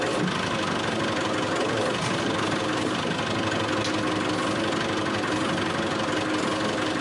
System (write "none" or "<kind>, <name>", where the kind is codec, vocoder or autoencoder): none